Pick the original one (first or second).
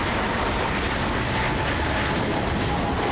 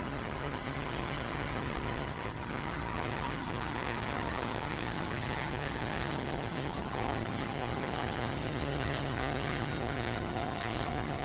first